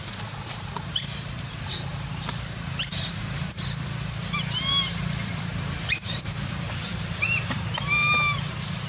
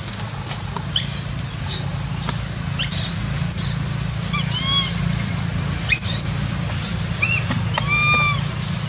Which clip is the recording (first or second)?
second